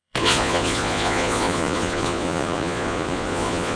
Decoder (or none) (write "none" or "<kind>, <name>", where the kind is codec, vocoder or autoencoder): vocoder, Vocos